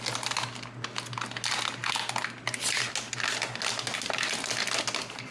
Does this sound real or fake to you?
real